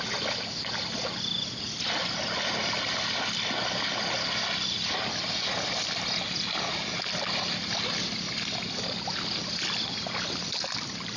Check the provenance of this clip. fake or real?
real